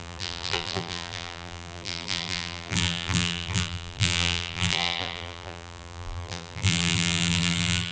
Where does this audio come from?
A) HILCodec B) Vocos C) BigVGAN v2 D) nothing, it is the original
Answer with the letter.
C